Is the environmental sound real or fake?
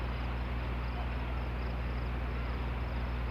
real